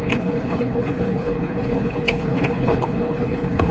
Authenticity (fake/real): fake